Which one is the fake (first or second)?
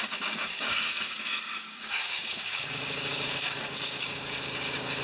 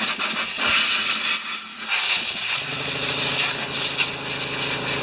first